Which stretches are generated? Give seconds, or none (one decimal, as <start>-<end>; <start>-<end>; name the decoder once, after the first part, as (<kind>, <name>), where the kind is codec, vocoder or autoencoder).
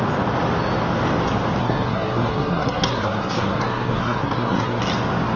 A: 1.6-4.8 (codec, SNAC)